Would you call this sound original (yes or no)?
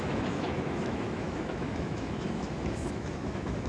no